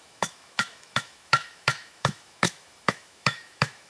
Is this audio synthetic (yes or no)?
yes